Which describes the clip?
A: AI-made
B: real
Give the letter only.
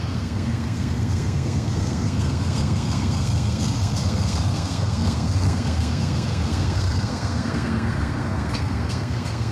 A